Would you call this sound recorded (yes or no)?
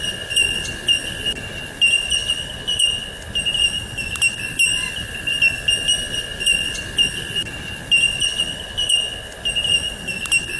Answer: yes